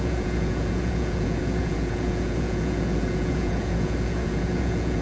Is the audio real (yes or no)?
no